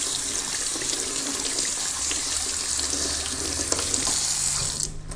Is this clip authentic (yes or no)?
yes